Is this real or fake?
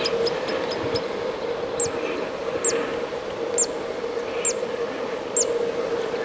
real